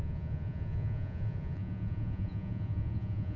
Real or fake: fake